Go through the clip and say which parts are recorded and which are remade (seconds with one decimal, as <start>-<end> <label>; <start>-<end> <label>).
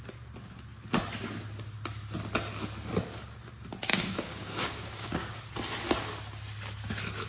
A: 0.0-3.9 recorded; 3.9-5.5 remade; 5.5-7.3 recorded